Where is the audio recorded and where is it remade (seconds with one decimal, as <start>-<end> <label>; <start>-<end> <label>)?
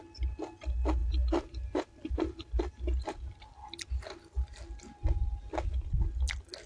0.0-1.0 recorded; 1.0-2.6 remade; 2.6-6.7 recorded